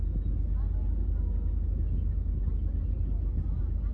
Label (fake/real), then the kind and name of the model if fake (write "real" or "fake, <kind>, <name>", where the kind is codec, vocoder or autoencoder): real